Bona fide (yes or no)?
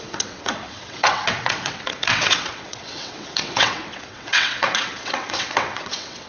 no